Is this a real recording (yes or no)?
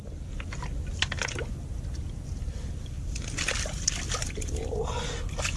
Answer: yes